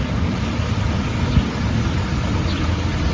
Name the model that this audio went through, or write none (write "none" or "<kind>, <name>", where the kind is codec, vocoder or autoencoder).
none